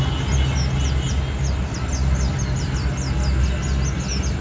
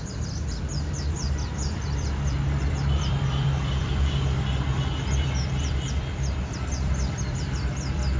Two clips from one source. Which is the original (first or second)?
first